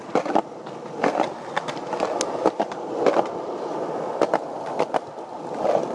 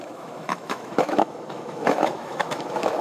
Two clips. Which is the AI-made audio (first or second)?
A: second